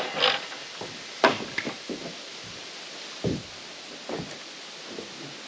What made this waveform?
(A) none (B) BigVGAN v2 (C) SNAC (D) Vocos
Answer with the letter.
A